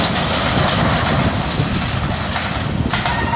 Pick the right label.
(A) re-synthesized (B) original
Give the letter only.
B